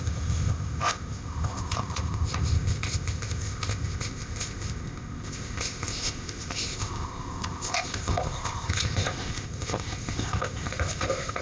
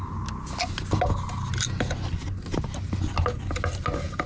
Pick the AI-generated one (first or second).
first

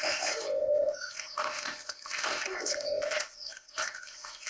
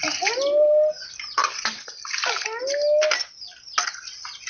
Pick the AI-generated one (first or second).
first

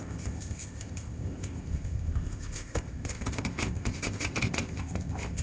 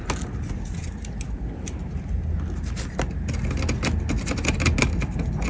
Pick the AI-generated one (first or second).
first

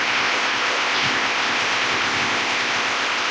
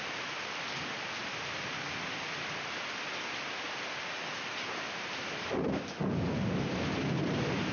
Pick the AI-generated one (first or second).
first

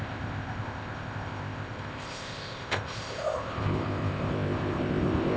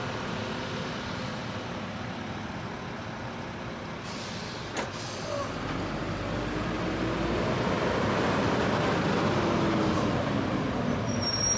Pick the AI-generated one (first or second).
first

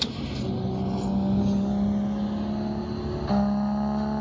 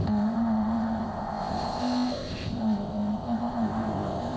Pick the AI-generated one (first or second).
second